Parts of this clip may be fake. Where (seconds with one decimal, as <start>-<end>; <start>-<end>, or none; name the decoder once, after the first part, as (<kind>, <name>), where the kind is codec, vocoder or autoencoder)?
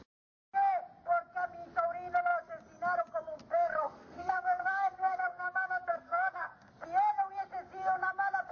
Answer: 3.5-6.7 (codec, SNAC)